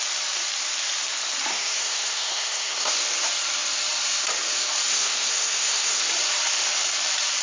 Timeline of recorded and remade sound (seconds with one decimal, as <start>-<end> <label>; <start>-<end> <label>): 0.0-1.5 recorded; 1.5-2.9 remade; 2.9-4.9 recorded; 4.9-6.0 remade; 6.0-7.4 recorded